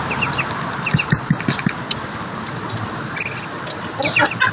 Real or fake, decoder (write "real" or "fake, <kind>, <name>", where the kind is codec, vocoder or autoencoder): real